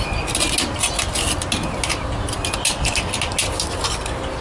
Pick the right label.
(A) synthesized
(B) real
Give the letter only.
B